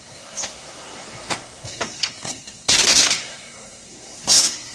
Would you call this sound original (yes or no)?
no